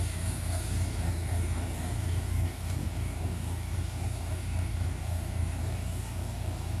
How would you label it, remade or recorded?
remade